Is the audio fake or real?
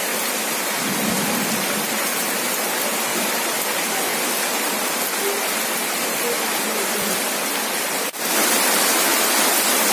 real